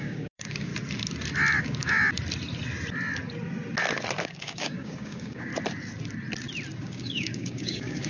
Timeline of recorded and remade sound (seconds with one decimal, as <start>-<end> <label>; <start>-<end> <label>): 0.0-0.7 remade; 0.7-1.6 recorded; 1.6-2.0 remade; 2.0-4.2 recorded; 4.2-5.5 remade; 5.5-6.8 recorded; 6.8-8.1 remade